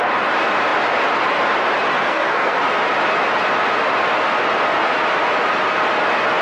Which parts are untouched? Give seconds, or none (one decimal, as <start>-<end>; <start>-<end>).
0.0-1.9; 2.6-6.4